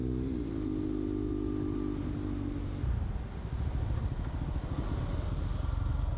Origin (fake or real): real